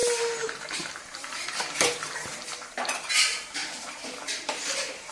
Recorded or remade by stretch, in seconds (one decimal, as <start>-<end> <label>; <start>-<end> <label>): 0.0-3.1 remade; 3.1-3.6 recorded; 3.6-5.1 remade

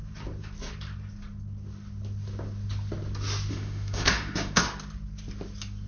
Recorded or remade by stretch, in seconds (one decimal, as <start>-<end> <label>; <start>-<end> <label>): 0.0-3.5 recorded; 3.5-4.6 remade; 4.6-5.9 recorded

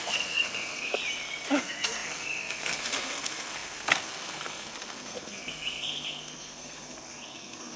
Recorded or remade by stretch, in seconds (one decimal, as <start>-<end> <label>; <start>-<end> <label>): 0.0-1.0 remade; 1.0-1.6 recorded; 1.6-7.8 remade